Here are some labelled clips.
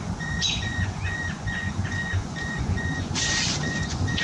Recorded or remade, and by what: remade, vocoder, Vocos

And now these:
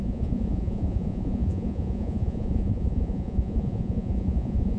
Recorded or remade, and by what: remade, vocoder, Vocos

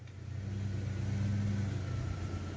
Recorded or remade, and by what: recorded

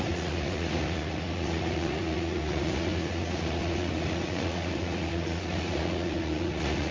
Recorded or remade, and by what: remade, vocoder, Vocos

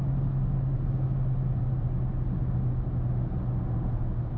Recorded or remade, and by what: recorded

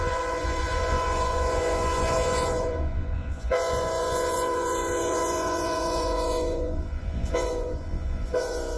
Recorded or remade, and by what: remade, vocoder, Vocos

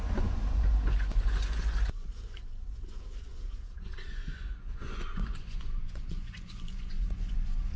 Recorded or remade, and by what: remade, vocoder, Vocos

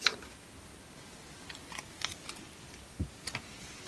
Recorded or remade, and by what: recorded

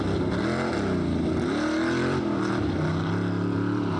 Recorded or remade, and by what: recorded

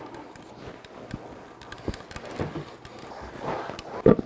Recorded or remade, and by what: recorded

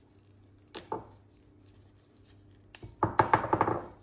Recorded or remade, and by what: recorded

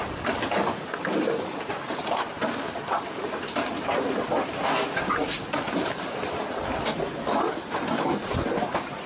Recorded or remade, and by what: recorded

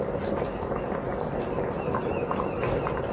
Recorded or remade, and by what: recorded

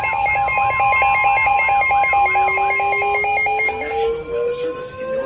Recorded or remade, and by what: recorded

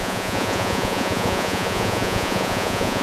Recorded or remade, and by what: remade, vocoder, Vocos